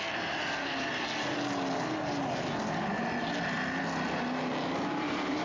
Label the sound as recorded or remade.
recorded